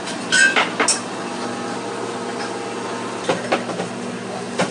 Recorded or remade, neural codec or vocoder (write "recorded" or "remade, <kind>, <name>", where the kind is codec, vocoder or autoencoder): recorded